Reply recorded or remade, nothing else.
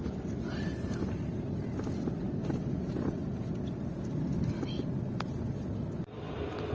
recorded